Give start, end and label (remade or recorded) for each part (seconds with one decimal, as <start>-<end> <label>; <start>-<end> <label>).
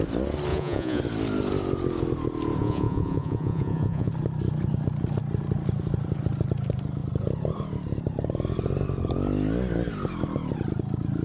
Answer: 0.0-0.5 recorded; 0.5-1.0 remade; 1.0-2.6 recorded; 2.6-4.1 remade; 4.1-11.2 recorded